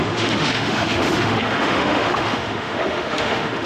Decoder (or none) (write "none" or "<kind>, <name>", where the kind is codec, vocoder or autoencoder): autoencoder, DAC-VAE